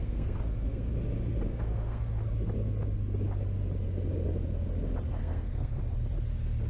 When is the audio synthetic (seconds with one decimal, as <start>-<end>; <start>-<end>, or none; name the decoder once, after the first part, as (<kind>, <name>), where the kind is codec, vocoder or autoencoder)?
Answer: 0.0-0.9 (codec, SNAC); 1.5-2.0; 5.2-5.7